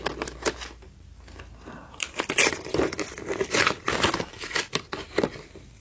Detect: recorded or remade recorded